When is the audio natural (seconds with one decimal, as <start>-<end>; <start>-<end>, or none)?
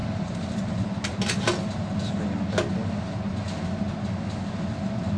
0.0-5.2